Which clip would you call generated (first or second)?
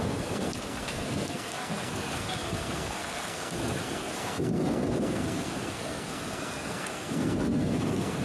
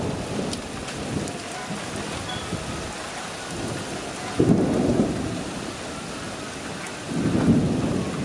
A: first